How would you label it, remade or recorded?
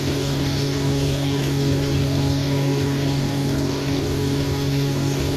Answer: remade